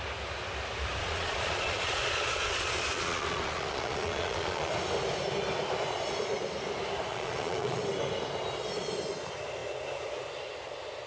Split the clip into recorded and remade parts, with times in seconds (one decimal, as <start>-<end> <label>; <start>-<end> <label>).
0.0-1.0 recorded; 1.0-4.7 remade; 4.7-7.1 recorded; 7.1-7.8 remade; 7.8-11.1 recorded